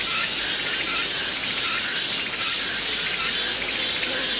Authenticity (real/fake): real